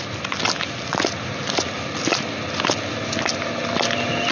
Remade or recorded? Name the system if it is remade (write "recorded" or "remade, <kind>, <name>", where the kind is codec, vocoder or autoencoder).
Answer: recorded